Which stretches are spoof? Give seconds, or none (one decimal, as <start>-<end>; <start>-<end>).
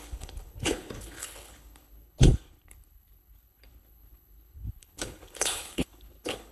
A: 0.0-6.5